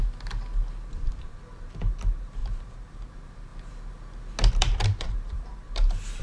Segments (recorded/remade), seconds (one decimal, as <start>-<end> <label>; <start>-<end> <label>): 0.0-1.5 recorded; 1.5-3.5 remade; 3.5-4.5 recorded; 4.5-6.2 remade